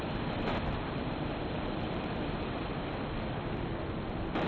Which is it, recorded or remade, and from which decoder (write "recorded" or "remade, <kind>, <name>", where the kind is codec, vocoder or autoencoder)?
remade, vocoder, BigVGAN v2